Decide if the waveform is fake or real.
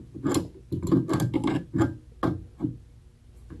real